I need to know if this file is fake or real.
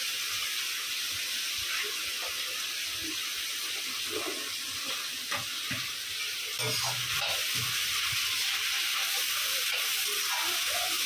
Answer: real